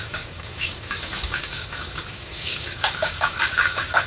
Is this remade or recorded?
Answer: remade